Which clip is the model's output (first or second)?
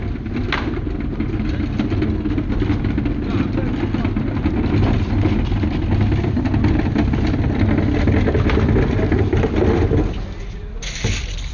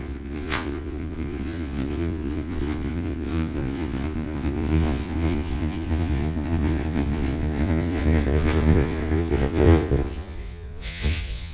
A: second